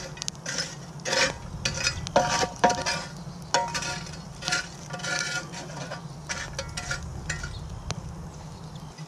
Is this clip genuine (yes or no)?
yes